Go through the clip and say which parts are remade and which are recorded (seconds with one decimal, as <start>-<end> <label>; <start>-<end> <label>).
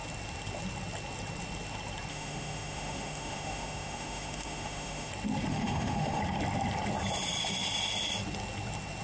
0.0-2.1 recorded; 2.1-5.1 remade; 5.1-5.5 recorded; 5.5-6.2 remade; 6.2-9.0 recorded